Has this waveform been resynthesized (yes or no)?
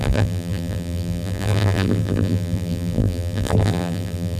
yes